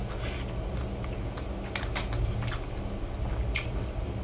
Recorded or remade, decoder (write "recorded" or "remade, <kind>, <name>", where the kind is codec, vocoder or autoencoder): recorded